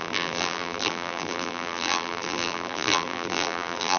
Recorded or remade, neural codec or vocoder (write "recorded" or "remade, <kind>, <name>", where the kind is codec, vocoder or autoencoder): remade, vocoder, BigVGAN v2